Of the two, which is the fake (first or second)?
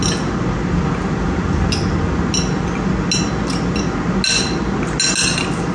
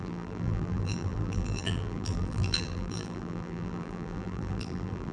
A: second